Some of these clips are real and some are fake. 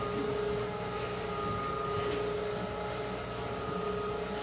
real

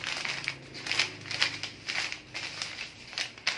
real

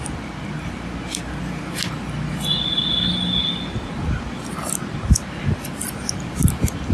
real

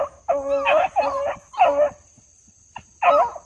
real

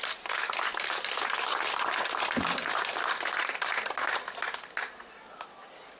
real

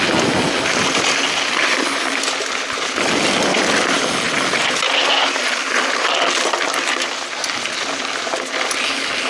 real